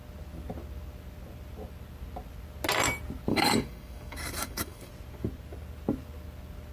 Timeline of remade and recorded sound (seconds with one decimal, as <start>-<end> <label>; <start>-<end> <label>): 0.0-3.3 recorded; 3.3-4.9 remade; 4.9-6.7 recorded